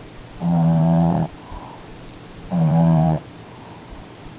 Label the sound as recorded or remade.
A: remade